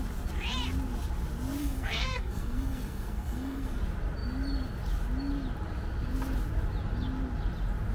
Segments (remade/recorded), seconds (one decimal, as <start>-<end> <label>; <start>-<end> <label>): 0.0-1.6 recorded; 1.6-3.8 remade; 3.8-7.9 recorded

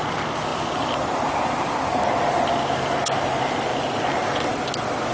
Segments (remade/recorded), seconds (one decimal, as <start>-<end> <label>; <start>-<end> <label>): 0.0-5.1 recorded

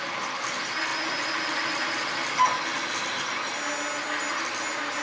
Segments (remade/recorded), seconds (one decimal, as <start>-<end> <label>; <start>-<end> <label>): 0.0-5.0 recorded

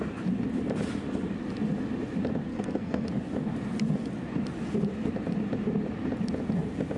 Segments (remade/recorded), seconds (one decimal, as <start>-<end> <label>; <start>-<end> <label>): 0.0-2.5 recorded; 2.5-3.1 remade; 3.1-7.0 recorded

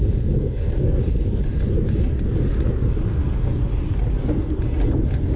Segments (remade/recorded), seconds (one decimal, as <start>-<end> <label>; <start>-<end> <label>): 0.0-0.4 recorded; 0.4-1.0 remade; 1.0-3.1 recorded; 3.1-3.6 remade; 3.6-5.4 recorded

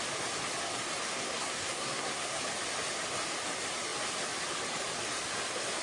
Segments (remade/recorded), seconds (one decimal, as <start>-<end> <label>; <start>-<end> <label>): 0.0-1.1 recorded; 1.1-2.4 remade; 2.4-5.8 recorded